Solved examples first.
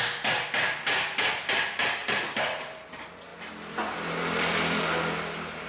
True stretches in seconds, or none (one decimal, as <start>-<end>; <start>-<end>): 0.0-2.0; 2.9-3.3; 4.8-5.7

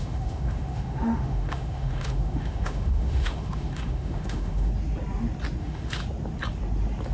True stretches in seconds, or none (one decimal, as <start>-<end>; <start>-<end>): 4.7-5.6; 6.0-7.1

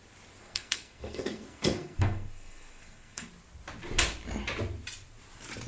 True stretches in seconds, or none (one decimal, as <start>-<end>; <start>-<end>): 0.0-0.4; 3.3-5.7